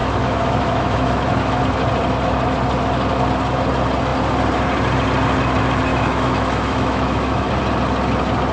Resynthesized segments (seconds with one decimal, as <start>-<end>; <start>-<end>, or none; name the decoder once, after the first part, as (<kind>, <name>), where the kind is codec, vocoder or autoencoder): 0.0-1.6 (autoencoder, DAC-VAE); 5.9-7.5